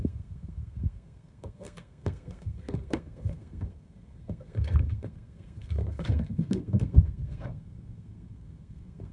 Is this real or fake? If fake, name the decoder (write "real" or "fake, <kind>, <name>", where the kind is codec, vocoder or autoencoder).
fake, codec, SNAC